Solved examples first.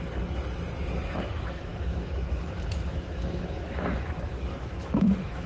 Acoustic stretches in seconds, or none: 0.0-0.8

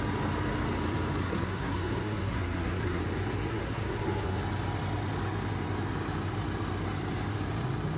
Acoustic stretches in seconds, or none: 0.0-1.2; 3.0-3.5; 4.4-8.0

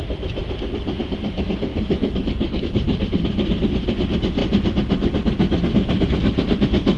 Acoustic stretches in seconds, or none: 0.0-1.7; 2.6-7.0